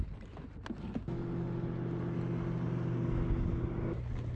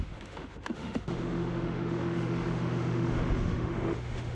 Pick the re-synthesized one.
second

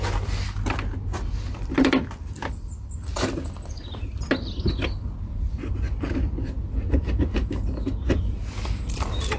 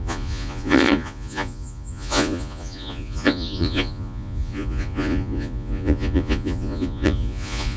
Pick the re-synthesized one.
second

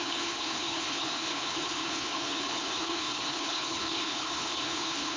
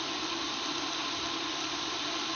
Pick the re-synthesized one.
first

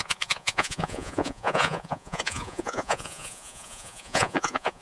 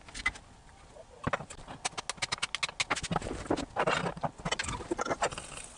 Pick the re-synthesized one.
first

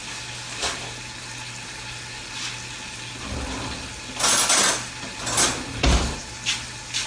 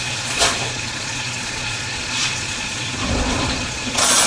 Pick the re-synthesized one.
second